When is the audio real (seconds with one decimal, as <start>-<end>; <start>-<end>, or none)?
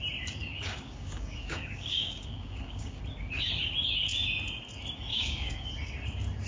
0.0-0.4; 3.0-5.1; 5.7-6.5